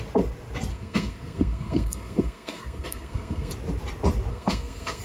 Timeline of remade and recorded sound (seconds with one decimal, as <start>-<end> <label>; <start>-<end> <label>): 0.0-0.7 recorded; 0.7-3.5 remade; 3.5-4.3 recorded; 4.3-5.0 remade